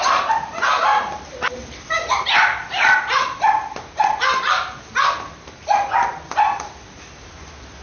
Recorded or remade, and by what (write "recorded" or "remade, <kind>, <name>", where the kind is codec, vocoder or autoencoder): recorded